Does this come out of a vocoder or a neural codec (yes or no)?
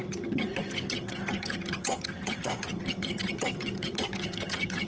yes